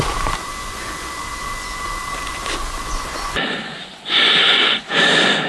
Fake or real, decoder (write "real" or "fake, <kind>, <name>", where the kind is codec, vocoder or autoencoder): fake, vocoder, Vocos